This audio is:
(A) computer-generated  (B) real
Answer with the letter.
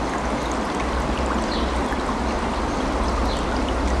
B